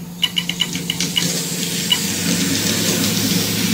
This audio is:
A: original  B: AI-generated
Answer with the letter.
A